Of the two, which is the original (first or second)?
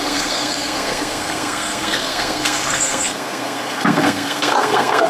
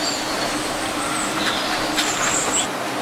second